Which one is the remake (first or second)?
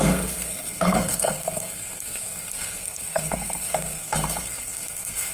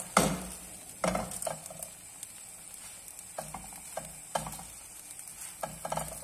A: first